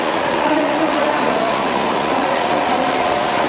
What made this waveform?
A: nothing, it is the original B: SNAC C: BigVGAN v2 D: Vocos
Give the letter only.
D